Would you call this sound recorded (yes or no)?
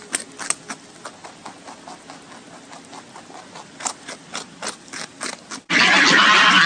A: yes